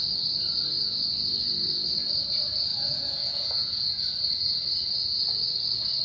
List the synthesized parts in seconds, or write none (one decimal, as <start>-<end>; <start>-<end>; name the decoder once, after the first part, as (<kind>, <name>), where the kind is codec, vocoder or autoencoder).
2.7-4.0 (vocoder, Vocos)

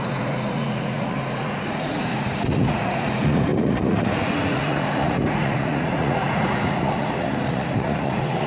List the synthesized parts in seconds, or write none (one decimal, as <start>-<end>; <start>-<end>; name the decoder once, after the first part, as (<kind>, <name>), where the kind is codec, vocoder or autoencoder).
0.0-8.5 (vocoder, Vocos)

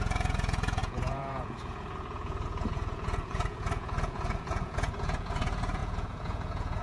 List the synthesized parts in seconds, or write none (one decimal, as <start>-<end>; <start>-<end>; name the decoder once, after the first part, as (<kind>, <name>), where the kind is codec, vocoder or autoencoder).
0.0-6.8 (vocoder, Vocos)

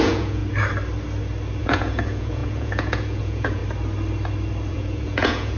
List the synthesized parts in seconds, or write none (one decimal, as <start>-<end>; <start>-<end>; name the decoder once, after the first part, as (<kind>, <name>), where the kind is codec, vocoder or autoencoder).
0.0-0.4 (vocoder, Vocos); 1.6-3.6; 4.7-5.6